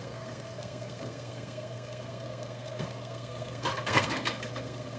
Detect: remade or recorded remade